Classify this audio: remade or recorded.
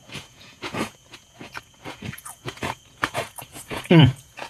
remade